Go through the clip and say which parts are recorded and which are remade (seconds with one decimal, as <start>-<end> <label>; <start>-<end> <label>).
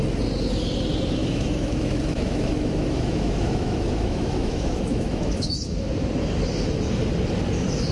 0.0-1.2 recorded; 1.2-5.9 remade; 5.9-7.9 recorded